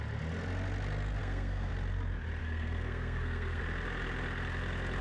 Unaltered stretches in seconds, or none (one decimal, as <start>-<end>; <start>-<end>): 0.0-1.2; 1.7-2.4; 3.6-5.0